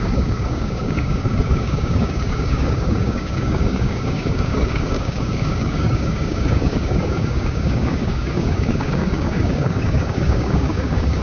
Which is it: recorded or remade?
remade